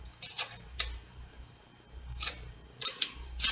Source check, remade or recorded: remade